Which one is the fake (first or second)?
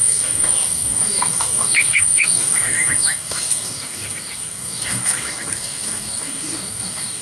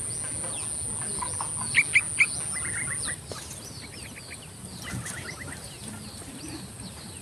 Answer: first